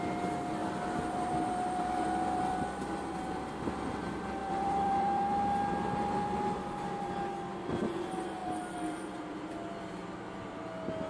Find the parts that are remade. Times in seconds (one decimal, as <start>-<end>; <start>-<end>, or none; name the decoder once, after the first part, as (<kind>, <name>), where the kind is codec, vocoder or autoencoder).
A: 0.6-3.7 (vocoder, BigVGAN v2); 4.4-6.4; 8.4-9.3